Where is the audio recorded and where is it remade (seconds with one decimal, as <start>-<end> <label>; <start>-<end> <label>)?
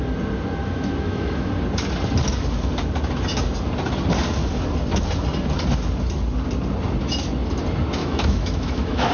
0.0-0.6 recorded; 0.6-1.5 remade; 1.5-8.0 recorded; 8.0-9.1 remade